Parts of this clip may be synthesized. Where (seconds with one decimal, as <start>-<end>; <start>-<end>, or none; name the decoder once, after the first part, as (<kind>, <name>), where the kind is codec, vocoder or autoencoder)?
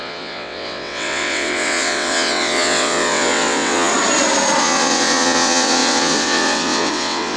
0.0-3.9 (vocoder, WaveNeXt); 4.6-7.4